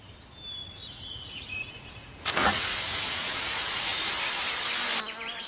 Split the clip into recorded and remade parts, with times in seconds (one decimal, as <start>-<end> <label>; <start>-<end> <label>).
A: 0.0-0.8 recorded; 0.8-4.1 remade; 4.1-5.5 recorded